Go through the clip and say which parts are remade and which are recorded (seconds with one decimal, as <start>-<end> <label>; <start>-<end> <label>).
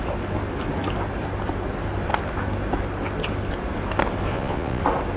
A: 0.0-4.3 recorded; 4.3-4.8 remade; 4.8-5.2 recorded